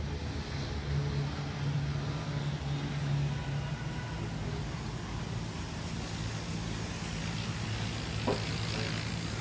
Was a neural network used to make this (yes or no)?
no